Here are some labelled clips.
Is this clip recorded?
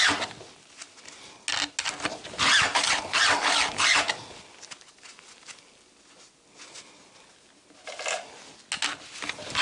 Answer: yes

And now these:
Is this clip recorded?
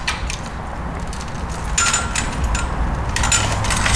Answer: yes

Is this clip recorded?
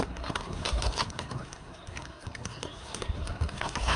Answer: no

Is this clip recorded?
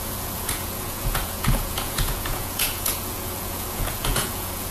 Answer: no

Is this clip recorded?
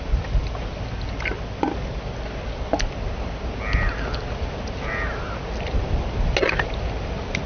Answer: yes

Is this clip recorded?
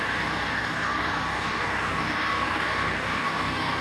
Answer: no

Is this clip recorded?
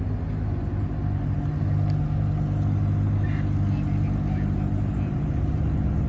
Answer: yes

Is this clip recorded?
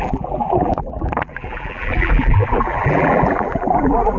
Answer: no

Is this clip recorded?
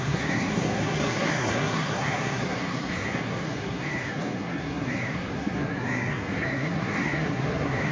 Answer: no